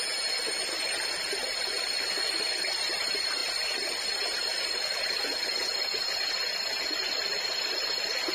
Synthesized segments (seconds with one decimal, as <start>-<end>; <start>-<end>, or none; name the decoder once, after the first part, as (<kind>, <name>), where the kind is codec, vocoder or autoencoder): none

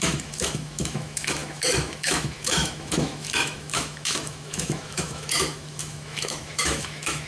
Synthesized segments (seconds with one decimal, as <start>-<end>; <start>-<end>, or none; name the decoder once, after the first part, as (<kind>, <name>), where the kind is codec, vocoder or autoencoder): 0.0-7.3 (autoencoder, DAC-VAE)

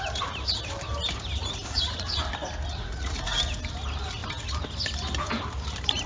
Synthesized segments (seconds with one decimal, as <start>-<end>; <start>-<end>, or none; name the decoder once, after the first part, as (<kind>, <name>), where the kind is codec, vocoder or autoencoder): 1.4-2.2 (vocoder, Vocos); 2.7-3.4

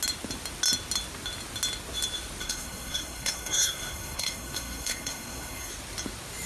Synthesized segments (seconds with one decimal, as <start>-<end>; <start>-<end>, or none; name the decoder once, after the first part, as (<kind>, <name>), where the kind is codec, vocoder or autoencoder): 2.4-5.7 (codec, SNAC)

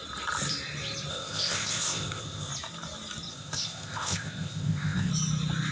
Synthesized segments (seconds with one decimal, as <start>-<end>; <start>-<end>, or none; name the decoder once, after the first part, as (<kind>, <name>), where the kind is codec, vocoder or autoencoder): 1.1-2.5 (codec, ZipCodec); 3.3-5.1